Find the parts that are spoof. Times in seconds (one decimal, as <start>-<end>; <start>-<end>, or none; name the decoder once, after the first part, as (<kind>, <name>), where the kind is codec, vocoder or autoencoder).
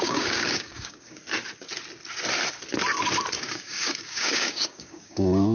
0.0-1.2 (codec, DAC); 3.4-5.5